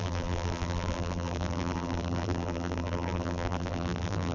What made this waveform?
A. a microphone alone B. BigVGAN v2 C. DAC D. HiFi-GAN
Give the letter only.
B